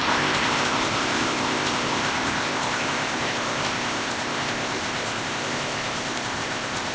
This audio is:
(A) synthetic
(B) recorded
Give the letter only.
A